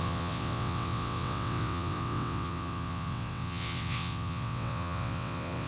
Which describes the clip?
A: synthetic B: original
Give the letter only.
A